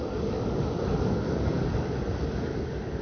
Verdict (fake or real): fake